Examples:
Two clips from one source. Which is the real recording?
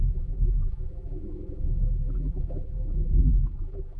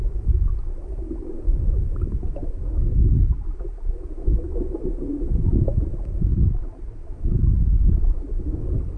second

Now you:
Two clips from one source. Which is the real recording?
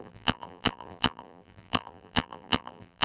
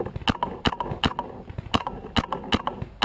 second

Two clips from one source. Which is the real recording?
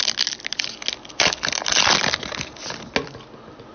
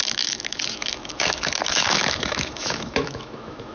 first